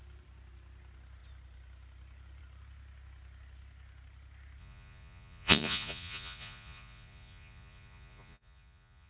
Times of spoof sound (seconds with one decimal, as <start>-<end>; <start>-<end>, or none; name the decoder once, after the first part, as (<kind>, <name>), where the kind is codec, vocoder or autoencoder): 4.6-9.1 (vocoder, Vocos)